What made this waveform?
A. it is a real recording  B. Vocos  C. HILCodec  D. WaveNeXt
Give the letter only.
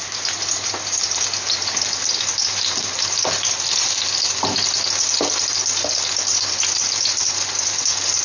A